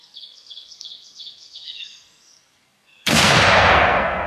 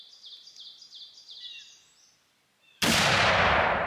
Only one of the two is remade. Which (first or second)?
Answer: first